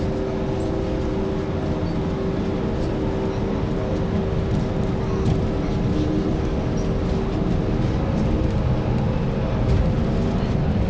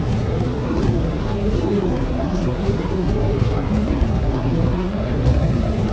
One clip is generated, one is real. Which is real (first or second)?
first